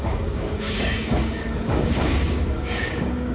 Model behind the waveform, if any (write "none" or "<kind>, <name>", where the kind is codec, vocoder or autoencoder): codec, DAC